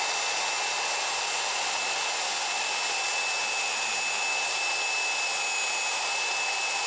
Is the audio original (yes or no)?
yes